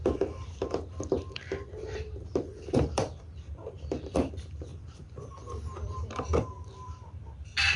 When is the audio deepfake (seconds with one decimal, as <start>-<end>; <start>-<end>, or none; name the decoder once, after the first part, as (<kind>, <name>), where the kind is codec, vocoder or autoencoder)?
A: 0.0-4.3 (vocoder, BigVGAN v2); 4.7-7.2